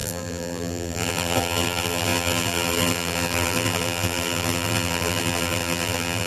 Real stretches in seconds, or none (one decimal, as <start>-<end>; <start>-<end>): none